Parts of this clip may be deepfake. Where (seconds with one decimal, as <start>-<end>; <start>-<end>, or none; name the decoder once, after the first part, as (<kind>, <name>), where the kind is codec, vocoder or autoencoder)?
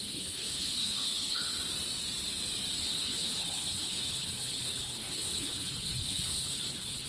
0.0-1.6 (codec, HILCodec); 2.8-7.1